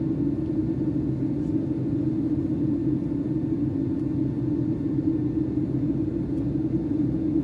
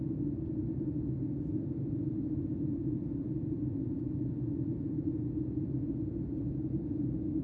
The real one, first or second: first